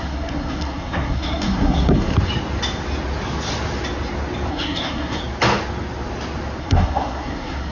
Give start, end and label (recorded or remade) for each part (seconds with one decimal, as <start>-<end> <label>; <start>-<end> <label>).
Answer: 0.0-2.1 remade; 2.1-4.5 recorded; 4.5-5.2 remade; 5.2-6.6 recorded; 6.6-7.7 remade